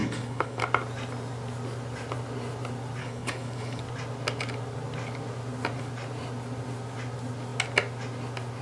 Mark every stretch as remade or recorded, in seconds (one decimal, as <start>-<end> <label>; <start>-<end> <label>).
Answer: 0.0-0.6 remade; 0.6-3.0 recorded; 3.0-3.8 remade; 3.8-8.6 recorded